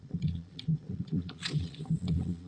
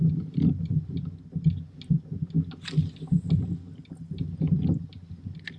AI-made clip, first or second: first